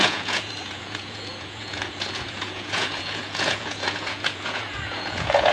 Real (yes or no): no